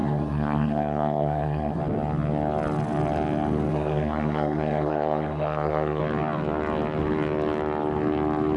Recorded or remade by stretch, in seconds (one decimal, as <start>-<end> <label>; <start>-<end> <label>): 0.0-1.8 remade; 1.8-3.7 recorded; 3.7-6.0 remade; 6.0-8.6 recorded